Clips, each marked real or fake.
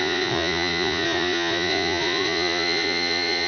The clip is fake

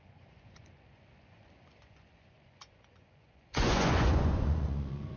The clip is fake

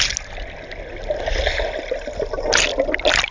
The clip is real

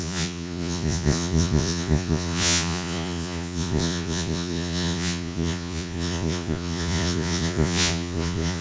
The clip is fake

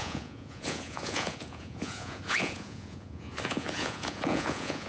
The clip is fake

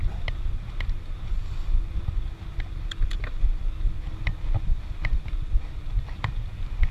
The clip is real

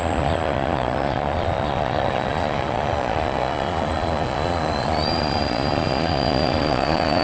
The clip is fake